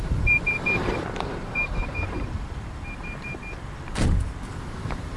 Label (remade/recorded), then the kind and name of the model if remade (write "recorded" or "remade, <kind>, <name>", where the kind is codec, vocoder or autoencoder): remade, vocoder, BigVGAN v2